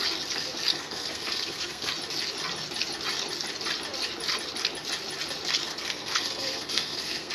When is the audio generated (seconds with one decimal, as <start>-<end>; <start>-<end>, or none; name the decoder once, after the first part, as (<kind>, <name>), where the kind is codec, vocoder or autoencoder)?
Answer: 0.7-1.9 (codec, SNAC); 5.7-7.3